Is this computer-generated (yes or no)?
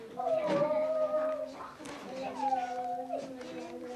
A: no